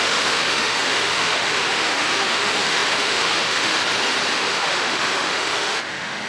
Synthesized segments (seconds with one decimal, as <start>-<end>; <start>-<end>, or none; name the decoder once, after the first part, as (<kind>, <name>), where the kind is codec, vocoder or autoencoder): 0.0-3.8 (autoencoder, DAC-VAE); 4.3-6.3